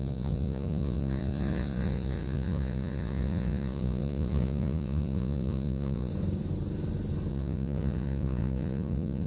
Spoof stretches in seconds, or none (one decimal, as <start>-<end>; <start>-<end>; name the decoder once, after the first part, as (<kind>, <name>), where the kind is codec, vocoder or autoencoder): 0.0-6.1 (vocoder, Vocos); 7.3-9.3